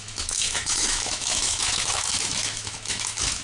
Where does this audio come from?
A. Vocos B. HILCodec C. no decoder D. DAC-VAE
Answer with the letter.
D